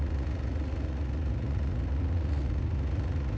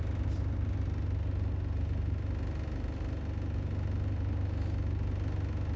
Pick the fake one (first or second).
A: first